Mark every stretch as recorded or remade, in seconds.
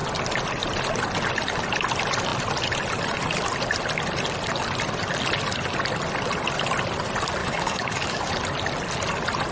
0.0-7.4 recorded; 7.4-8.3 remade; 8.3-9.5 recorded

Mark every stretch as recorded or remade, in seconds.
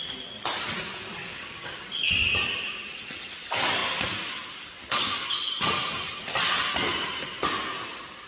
0.0-1.3 recorded; 1.3-1.8 remade; 1.8-8.3 recorded